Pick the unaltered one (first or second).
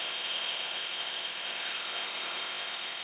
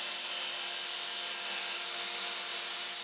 second